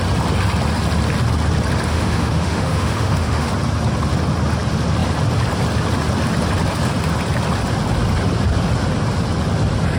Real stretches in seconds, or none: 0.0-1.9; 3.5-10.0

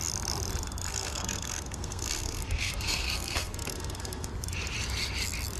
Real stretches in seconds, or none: 0.0-0.9; 4.3-5.6

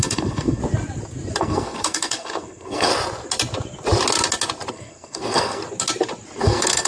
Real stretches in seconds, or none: 0.6-1.4; 2.9-4.7; 5.6-6.4

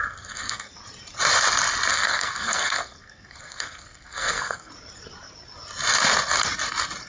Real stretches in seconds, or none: 0.7-1.9; 4.7-7.1

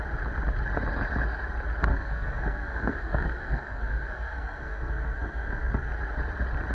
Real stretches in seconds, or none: 0.0-1.9; 5.9-6.7

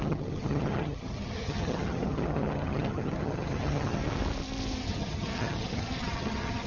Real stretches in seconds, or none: 4.0-4.8

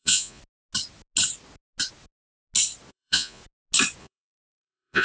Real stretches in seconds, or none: 0.4-2.9; 3.4-4.0

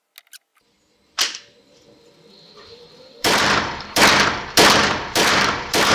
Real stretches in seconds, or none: 0.0-0.5; 4.0-4.8